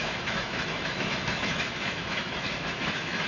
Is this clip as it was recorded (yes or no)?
no